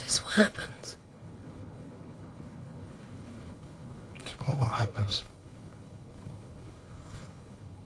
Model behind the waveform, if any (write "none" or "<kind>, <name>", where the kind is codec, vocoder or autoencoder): codec, HILCodec